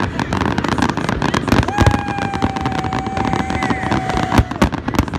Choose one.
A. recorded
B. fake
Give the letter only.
A